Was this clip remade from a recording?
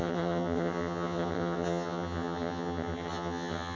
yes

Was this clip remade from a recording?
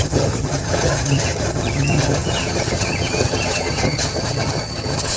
yes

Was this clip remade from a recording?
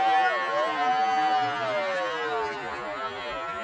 no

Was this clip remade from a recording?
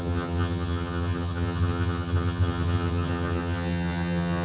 yes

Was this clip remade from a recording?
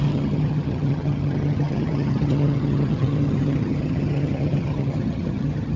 yes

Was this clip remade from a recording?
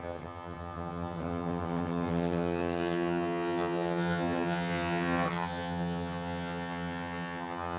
yes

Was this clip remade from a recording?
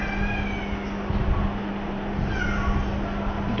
no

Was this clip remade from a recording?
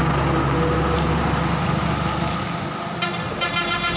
no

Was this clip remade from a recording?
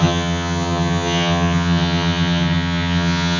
yes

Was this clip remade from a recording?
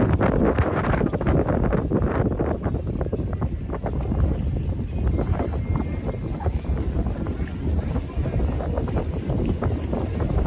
no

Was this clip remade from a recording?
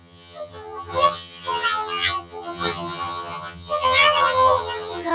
yes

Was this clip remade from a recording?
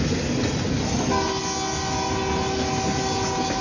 no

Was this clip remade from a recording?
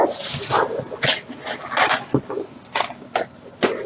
no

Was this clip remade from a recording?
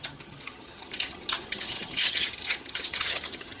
yes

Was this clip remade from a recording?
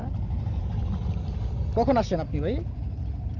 no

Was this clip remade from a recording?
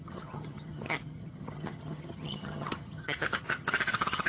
yes